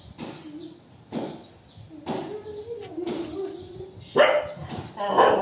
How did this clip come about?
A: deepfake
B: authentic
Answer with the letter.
B